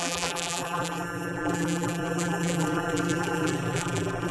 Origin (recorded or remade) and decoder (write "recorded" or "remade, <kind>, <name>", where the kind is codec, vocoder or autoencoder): remade, vocoder, BigVGAN v2